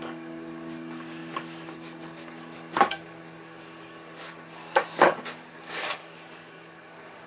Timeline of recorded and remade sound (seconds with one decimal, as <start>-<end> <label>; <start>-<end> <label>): 0.0-7.3 remade